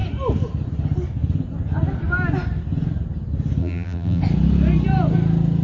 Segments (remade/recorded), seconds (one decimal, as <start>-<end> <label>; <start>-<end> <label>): 0.0-3.6 recorded; 3.6-4.2 remade; 4.2-5.6 recorded

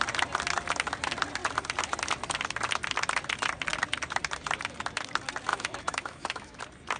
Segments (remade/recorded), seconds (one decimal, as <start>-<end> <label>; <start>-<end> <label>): 0.0-5.5 recorded; 5.5-6.6 remade; 6.6-7.0 recorded

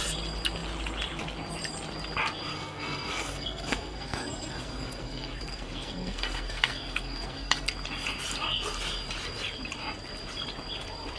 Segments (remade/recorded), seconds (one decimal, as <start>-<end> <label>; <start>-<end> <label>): 0.0-2.5 recorded; 2.5-7.7 remade; 7.7-11.2 recorded

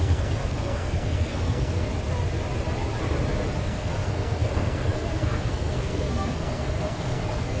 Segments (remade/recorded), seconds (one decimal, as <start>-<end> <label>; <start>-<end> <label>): 0.0-1.9 remade; 1.9-3.6 recorded; 3.6-7.6 remade